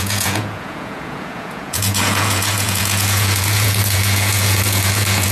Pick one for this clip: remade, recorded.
remade